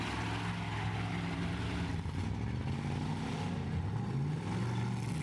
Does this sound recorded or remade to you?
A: recorded